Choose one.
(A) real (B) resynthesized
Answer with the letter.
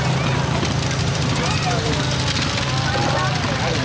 A